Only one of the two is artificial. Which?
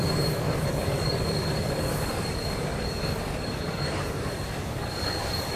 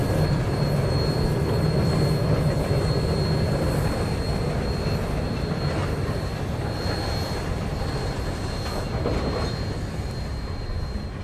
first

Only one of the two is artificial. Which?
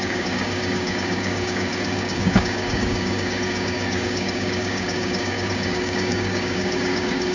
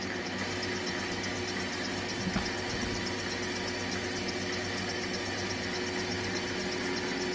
first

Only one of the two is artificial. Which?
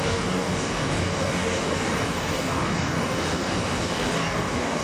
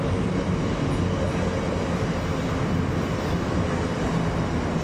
first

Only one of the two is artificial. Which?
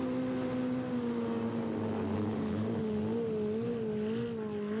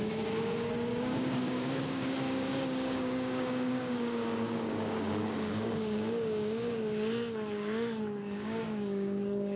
second